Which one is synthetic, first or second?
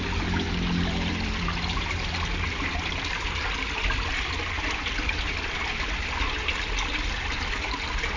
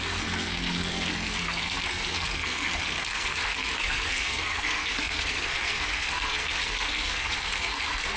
second